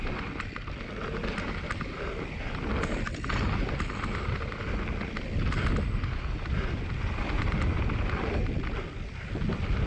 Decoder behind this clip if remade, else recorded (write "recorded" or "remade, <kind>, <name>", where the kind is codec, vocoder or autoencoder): recorded